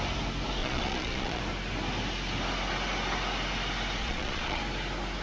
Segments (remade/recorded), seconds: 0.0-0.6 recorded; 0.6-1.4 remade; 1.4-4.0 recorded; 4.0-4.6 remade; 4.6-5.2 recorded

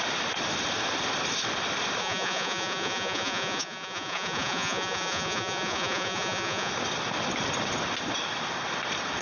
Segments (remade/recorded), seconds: 0.0-2.0 recorded; 2.0-6.7 remade; 6.7-9.2 recorded

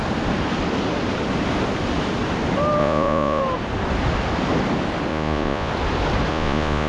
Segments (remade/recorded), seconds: 0.0-2.8 recorded; 2.8-3.4 remade; 3.4-5.1 recorded; 5.1-5.7 remade; 5.7-6.3 recorded; 6.3-6.9 remade

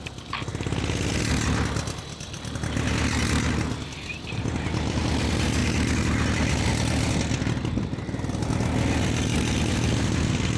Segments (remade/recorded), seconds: 0.0-10.6 recorded

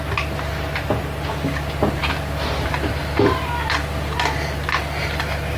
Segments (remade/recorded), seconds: 0.0-5.6 recorded

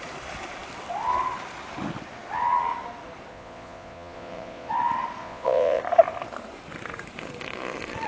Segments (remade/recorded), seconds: 0.0-3.3 recorded; 3.3-4.7 remade; 4.7-5.2 recorded; 5.2-5.8 remade; 5.8-8.1 recorded

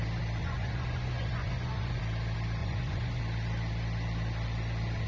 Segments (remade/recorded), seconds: 0.0-0.4 recorded; 0.4-2.0 remade; 2.0-2.6 recorded; 2.6-3.2 remade; 3.2-5.1 recorded